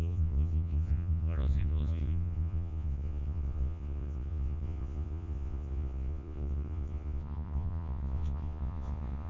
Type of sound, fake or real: fake